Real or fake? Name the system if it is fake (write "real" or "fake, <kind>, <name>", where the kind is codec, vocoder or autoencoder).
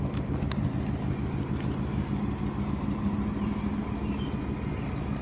real